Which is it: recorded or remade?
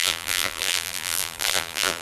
remade